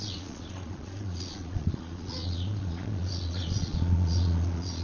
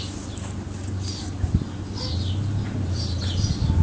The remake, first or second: first